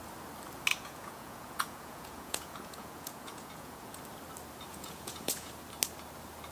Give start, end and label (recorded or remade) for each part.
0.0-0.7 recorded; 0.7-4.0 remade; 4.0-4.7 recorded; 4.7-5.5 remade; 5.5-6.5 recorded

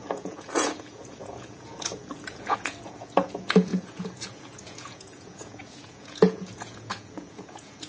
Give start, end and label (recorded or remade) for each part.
0.0-7.9 remade

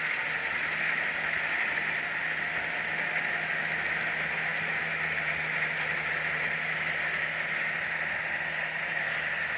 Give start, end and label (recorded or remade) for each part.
0.0-9.6 recorded

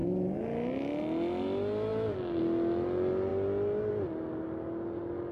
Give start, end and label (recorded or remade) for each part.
0.0-5.3 recorded